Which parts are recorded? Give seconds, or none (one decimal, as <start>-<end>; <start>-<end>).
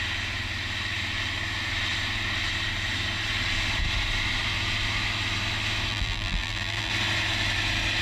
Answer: 0.0-5.9; 6.9-8.0